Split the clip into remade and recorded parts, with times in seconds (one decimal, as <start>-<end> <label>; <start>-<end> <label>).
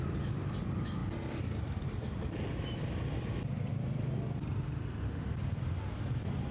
0.0-6.5 recorded